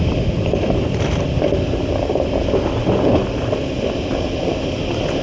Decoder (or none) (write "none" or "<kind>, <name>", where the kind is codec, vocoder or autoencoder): none